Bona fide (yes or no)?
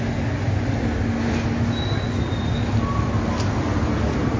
yes